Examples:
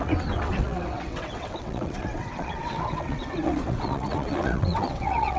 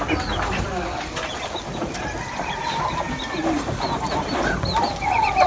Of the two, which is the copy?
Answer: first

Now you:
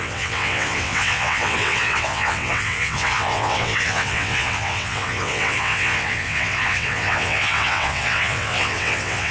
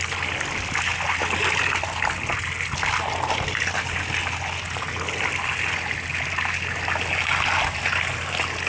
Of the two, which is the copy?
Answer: first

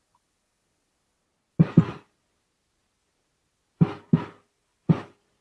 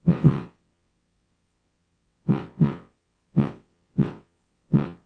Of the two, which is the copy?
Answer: second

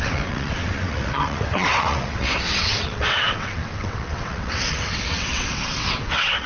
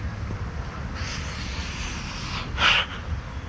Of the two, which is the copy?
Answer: first